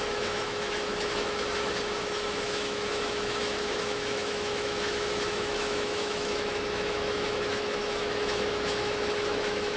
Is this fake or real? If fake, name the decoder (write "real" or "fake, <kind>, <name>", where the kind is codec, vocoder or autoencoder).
fake, autoencoder, DAC-VAE